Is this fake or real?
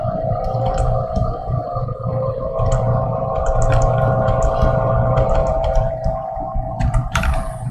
fake